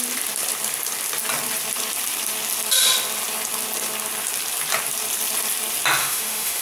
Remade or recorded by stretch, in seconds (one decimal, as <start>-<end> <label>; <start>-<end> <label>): 0.0-6.0 recorded; 6.0-6.6 remade